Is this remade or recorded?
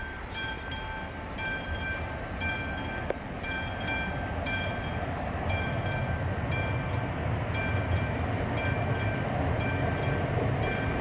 recorded